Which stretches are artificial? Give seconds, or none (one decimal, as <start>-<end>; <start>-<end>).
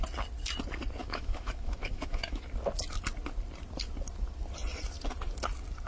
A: 1.0-2.4